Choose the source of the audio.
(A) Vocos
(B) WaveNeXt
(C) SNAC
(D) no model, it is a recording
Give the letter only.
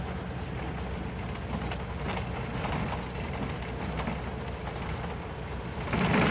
D